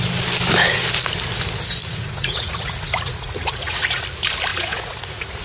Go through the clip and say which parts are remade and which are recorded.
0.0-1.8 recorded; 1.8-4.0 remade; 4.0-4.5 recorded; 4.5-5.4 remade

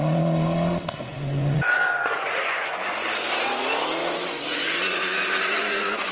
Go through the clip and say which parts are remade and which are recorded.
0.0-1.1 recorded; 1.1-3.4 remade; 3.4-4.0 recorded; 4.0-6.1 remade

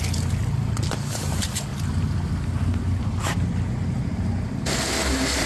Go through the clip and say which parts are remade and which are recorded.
0.0-5.5 recorded